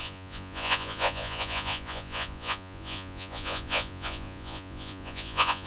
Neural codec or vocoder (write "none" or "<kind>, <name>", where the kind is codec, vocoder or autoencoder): vocoder, Vocos